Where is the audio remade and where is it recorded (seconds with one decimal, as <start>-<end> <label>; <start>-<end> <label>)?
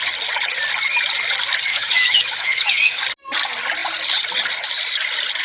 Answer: 0.0-1.7 recorded; 1.7-3.0 remade; 3.0-5.4 recorded